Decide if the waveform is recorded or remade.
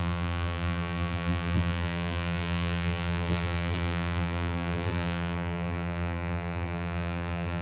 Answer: remade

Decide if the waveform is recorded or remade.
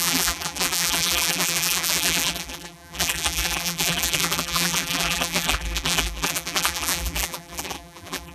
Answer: remade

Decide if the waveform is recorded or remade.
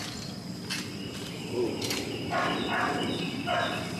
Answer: recorded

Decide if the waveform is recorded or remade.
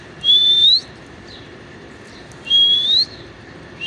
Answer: remade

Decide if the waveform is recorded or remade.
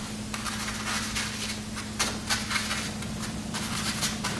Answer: recorded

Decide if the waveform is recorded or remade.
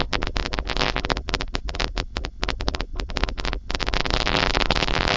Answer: remade